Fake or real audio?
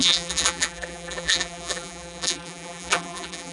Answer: fake